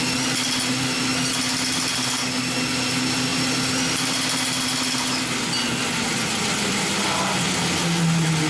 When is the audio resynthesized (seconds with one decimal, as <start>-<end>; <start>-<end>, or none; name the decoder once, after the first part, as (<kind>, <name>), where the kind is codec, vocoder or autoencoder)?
none